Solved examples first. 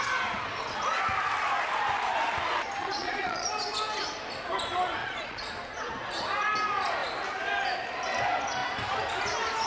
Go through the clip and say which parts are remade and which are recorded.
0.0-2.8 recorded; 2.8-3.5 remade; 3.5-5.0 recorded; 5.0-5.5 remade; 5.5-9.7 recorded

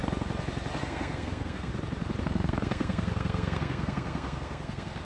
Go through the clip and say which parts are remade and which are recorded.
0.0-0.8 recorded; 0.8-1.7 remade; 1.7-2.2 recorded; 2.2-5.0 remade